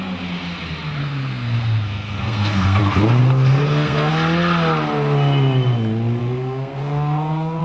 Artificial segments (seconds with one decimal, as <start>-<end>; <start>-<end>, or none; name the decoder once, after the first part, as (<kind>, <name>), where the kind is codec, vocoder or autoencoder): 1.0-2.8 (codec, SNAC); 3.2-4.1; 6.2-7.6